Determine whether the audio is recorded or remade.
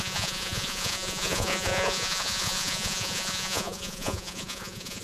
remade